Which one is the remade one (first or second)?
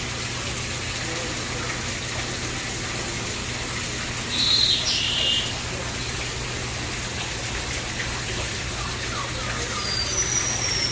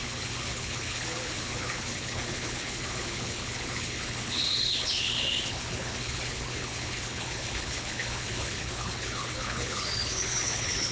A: second